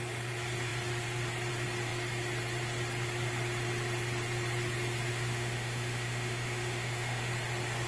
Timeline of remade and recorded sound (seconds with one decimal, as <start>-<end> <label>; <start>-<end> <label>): 0.0-5.1 recorded; 5.1-7.3 remade; 7.3-7.9 recorded